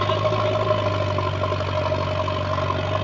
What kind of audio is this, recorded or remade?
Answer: recorded